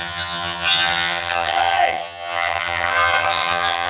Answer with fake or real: fake